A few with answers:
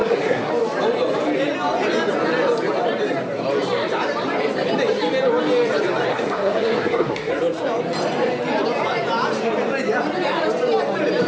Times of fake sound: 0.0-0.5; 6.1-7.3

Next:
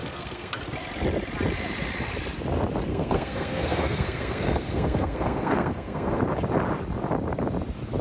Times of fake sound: 0.0-0.6; 2.9-6.2

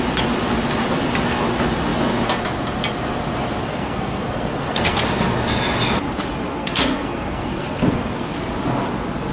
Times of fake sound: 3.6-5.0; 6.5-8.3

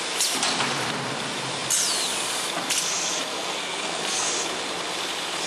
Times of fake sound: 3.3-4.3